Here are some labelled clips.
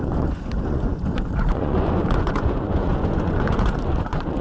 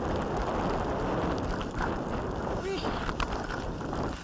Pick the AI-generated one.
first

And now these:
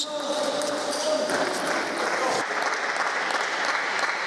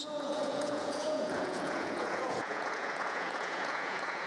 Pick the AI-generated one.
second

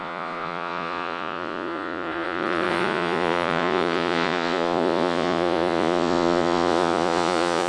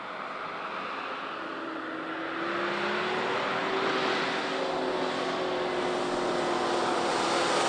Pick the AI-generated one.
first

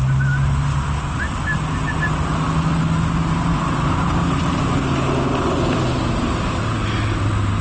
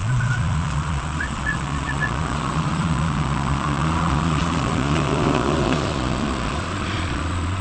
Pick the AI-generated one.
second